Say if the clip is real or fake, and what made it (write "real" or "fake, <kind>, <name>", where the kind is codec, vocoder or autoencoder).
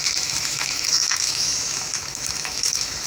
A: fake, autoencoder, DAC-VAE